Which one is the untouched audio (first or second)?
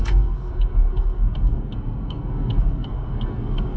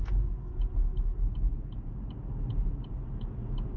second